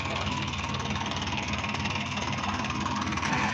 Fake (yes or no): yes